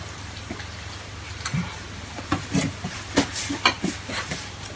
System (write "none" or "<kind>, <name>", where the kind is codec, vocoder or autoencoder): none